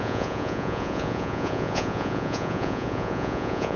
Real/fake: fake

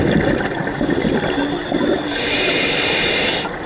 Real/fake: real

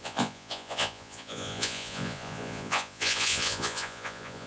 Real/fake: fake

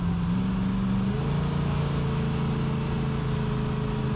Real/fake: real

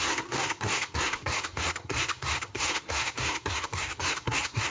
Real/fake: fake